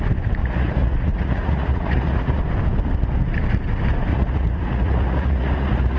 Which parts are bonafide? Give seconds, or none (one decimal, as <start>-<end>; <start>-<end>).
0.0-0.4; 2.4-4.1